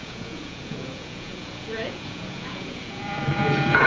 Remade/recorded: remade